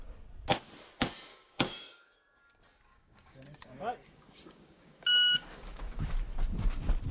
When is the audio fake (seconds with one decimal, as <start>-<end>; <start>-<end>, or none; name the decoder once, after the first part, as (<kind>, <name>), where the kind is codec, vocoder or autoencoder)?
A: 1.3-2.4 (codec, DAC); 2.9-6.0